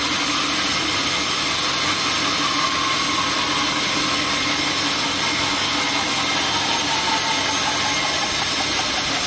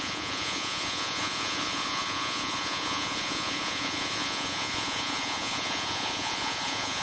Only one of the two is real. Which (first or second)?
first